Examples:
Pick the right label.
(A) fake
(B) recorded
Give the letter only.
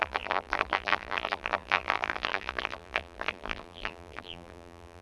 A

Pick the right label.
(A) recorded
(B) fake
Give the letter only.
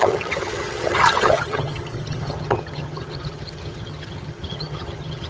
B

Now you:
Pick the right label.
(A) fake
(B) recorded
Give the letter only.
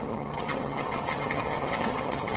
A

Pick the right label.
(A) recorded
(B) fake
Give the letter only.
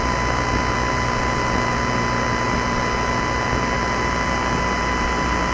A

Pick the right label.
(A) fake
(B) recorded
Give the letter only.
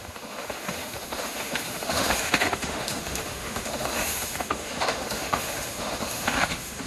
A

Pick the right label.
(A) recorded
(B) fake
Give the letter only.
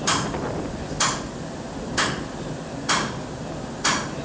A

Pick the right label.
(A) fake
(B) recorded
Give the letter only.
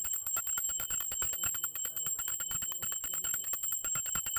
B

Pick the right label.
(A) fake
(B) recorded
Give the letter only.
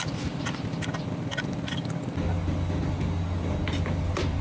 B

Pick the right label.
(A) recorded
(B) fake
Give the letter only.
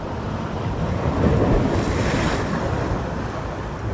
B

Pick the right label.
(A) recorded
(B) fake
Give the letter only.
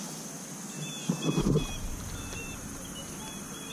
A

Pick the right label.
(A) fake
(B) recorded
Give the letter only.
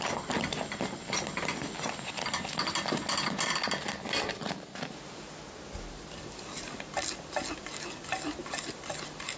B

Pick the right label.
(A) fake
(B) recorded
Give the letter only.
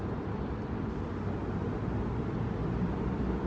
B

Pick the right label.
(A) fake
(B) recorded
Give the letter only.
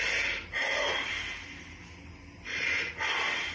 B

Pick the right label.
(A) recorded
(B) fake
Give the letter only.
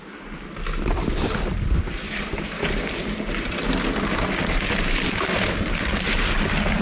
A